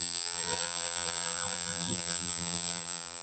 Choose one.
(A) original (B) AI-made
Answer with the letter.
B